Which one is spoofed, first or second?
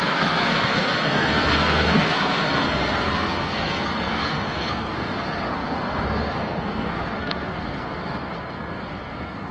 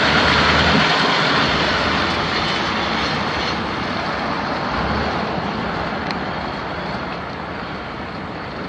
first